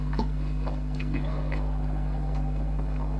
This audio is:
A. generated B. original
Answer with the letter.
A